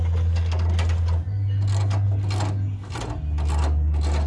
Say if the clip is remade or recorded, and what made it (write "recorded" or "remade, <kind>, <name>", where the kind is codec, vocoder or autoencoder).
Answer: recorded